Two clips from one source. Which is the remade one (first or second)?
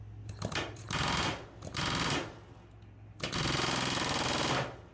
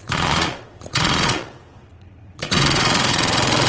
second